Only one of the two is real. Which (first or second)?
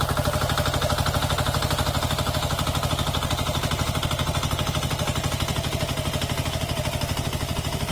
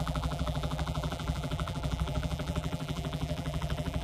first